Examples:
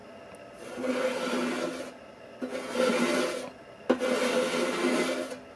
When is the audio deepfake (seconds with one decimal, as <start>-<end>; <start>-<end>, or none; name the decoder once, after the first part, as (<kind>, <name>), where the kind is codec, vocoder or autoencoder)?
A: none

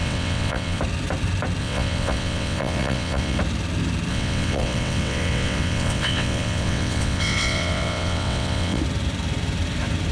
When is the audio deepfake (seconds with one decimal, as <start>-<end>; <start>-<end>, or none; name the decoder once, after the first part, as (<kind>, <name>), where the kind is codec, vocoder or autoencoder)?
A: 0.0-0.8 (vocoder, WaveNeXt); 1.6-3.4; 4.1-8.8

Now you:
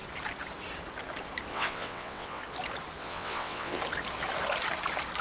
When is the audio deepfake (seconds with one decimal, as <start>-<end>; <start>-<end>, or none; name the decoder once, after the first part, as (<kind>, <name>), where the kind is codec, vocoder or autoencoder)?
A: 1.5-2.4 (vocoder, WaveNeXt); 3.0-3.8